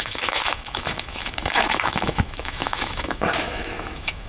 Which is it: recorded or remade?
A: remade